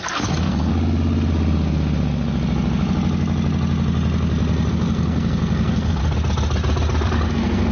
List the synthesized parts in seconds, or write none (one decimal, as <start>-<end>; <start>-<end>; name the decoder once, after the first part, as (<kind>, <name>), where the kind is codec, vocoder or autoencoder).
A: 0.0-0.7 (codec, SNAC); 4.7-6.0; 7.3-7.7